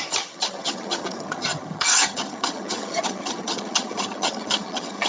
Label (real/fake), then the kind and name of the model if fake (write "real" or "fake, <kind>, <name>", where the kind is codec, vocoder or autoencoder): fake, vocoder, HiFi-GAN